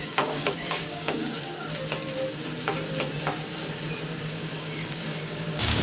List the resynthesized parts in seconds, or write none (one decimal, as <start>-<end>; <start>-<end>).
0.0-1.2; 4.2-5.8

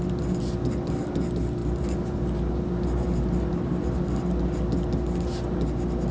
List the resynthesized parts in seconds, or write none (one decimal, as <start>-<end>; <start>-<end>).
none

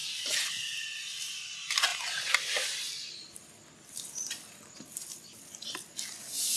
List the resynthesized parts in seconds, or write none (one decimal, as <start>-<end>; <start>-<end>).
1.9-5.9

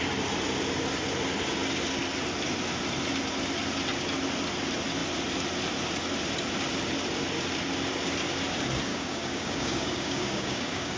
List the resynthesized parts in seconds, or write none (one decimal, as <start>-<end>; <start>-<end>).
8.9-11.0